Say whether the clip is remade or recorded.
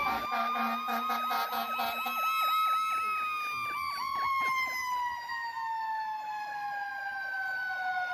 recorded